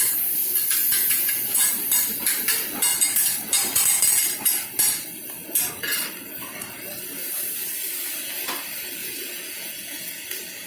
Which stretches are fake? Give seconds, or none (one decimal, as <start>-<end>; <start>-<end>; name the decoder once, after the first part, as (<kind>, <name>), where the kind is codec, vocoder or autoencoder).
0.8-1.7 (vocoder, Vocos); 9.0-10.7